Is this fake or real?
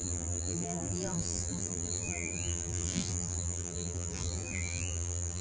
fake